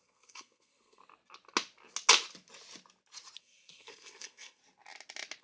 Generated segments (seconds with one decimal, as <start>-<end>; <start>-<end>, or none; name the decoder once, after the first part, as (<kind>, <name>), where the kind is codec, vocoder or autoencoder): 0.0-1.0 (codec, SNAC); 3.4-4.6